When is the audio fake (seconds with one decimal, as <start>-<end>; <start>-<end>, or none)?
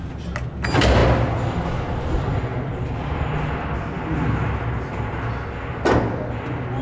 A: none